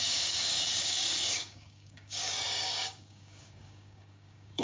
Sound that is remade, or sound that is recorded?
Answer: remade